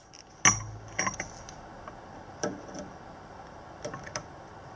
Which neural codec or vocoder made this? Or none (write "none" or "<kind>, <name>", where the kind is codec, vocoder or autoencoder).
none